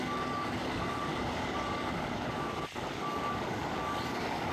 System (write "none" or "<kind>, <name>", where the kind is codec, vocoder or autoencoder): codec, DAC